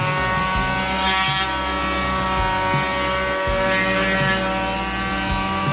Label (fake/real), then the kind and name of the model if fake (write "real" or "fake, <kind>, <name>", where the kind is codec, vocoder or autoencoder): real